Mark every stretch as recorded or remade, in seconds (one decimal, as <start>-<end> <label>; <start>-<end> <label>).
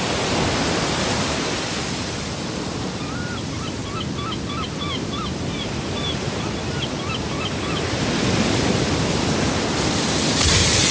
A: 0.0-3.8 remade; 3.8-8.5 recorded; 8.5-10.9 remade